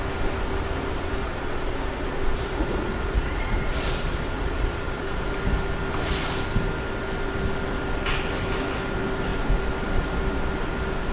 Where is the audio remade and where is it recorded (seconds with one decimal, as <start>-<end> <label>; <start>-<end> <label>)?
0.0-1.2 recorded; 1.2-5.3 remade; 5.3-11.1 recorded